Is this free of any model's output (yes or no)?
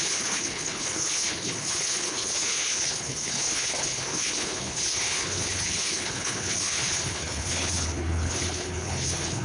no